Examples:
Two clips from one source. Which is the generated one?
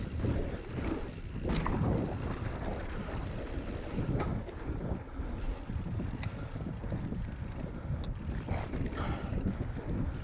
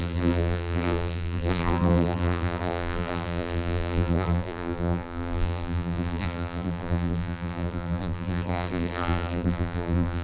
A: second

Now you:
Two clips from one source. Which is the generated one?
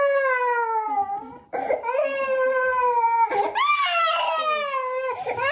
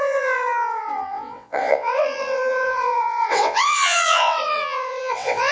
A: second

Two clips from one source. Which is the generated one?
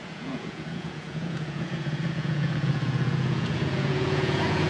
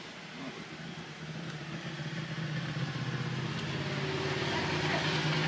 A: first